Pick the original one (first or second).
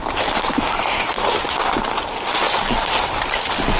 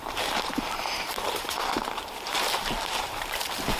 first